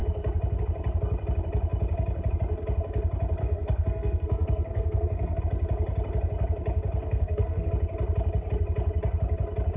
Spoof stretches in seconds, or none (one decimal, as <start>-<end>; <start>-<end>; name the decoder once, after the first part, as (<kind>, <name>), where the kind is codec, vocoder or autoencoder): 3.4-5.4 (codec, SNAC); 7.0-7.7